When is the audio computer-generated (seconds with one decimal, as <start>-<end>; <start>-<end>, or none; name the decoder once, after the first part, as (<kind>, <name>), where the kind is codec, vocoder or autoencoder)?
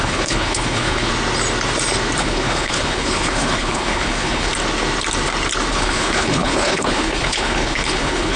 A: 0.0-1.1 (codec, HILCodec); 2.2-4.5; 5.7-8.4